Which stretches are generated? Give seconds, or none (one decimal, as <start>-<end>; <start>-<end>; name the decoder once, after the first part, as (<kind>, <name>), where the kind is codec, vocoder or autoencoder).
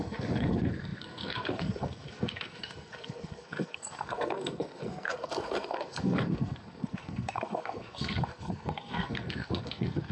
0.0-10.1 (codec, SNAC)